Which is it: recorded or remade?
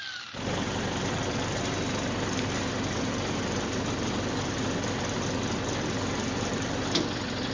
recorded